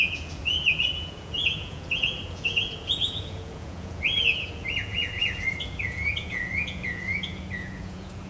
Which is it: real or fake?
fake